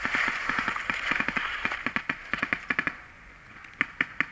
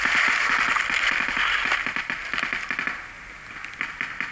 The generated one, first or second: first